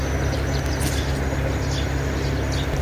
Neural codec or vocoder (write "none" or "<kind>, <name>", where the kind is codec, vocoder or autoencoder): none